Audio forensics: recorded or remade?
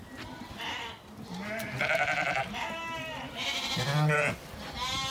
recorded